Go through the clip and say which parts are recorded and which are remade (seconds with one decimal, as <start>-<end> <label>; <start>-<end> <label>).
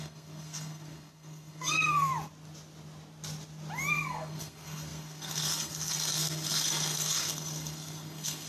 0.0-2.1 remade; 2.1-3.9 recorded; 3.9-8.5 remade